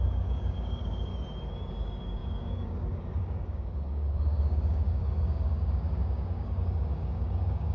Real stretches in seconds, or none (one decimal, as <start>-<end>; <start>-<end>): 1.1-1.7